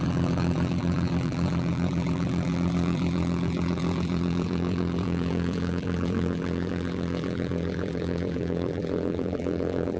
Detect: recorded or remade remade